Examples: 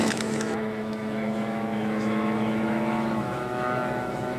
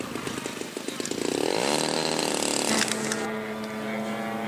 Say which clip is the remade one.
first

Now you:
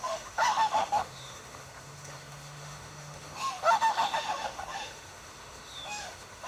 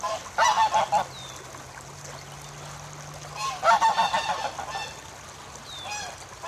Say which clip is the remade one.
first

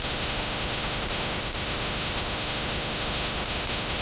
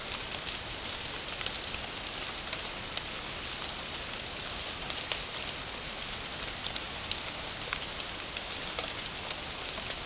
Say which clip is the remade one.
first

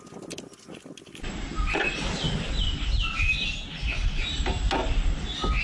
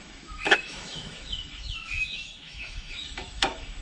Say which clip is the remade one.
second